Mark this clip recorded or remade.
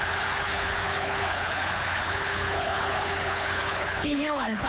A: remade